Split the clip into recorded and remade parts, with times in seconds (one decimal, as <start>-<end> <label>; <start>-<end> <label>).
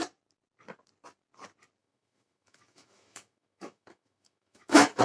0.0-1.8 recorded; 1.8-5.0 remade